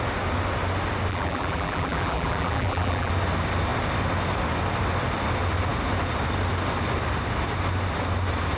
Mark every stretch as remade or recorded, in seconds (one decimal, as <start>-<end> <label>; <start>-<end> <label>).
0.0-1.1 recorded; 1.1-3.1 remade; 3.1-8.6 recorded